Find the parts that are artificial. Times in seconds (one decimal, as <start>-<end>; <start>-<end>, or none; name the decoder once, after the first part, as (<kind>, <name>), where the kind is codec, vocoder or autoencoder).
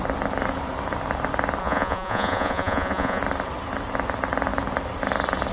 1.6-3.2 (vocoder, Vocos)